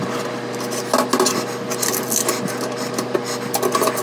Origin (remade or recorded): recorded